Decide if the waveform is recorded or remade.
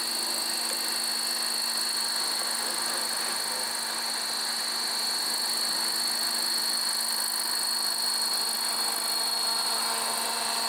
recorded